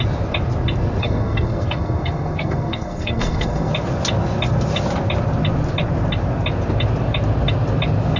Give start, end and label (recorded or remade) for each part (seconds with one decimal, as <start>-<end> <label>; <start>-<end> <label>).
0.0-1.0 recorded; 1.0-3.7 remade; 3.7-8.2 recorded